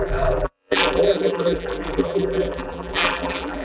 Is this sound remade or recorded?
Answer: remade